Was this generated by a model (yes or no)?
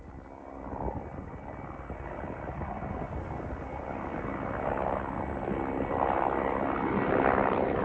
no